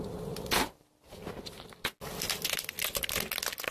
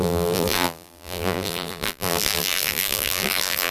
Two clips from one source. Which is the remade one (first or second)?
second